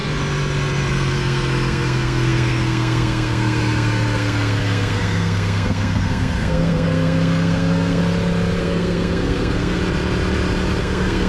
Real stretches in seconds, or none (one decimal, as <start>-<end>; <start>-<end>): 0.0-0.9; 8.0-8.6; 9.8-10.8